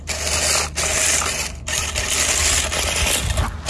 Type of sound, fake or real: real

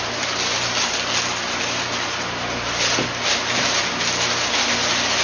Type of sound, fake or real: real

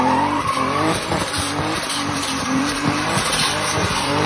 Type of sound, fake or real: fake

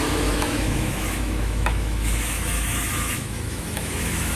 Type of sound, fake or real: fake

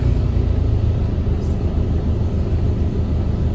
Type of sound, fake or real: real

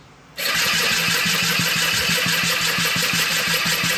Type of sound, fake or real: real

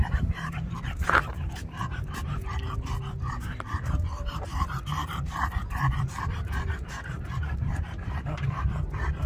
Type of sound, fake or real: fake